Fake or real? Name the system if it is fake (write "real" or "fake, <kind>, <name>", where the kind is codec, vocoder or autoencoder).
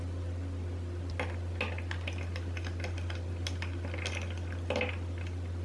real